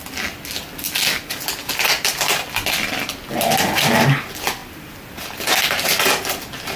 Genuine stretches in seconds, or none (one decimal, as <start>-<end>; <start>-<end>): 0.0-6.8